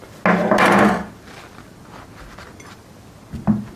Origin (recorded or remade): recorded